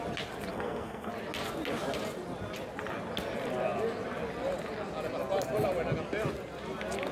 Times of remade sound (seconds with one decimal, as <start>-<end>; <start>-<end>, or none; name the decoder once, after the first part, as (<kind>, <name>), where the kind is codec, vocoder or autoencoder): 0.5-1.1 (codec, SNAC)